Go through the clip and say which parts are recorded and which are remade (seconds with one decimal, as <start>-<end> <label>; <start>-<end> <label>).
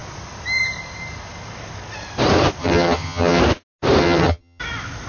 0.0-2.6 recorded; 2.6-3.4 remade; 3.4-4.0 recorded; 4.0-4.6 remade; 4.6-5.1 recorded